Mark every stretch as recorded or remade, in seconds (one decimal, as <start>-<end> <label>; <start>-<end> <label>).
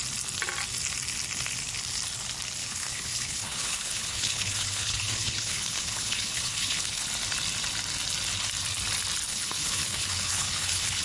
0.0-2.6 recorded; 2.6-7.1 remade; 7.1-9.3 recorded; 9.3-11.0 remade